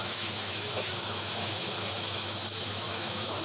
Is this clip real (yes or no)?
no